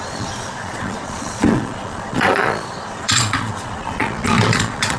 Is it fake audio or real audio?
fake